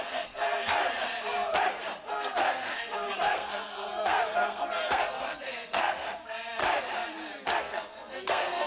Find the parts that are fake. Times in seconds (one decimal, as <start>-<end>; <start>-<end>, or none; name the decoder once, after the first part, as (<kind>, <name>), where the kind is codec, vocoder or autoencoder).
0.0-0.8 (codec, SNAC); 2.1-6.6; 7.6-8.7